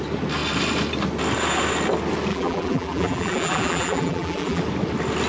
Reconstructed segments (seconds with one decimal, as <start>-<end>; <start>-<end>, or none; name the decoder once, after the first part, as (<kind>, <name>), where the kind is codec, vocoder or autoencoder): 2.3-4.6 (vocoder, BigVGAN v2)